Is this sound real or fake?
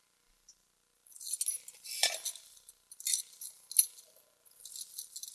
real